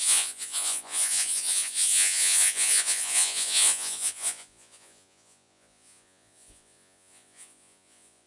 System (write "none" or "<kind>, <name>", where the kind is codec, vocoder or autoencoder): vocoder, Vocos